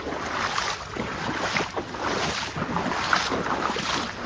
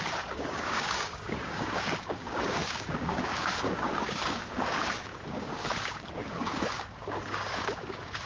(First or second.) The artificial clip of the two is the second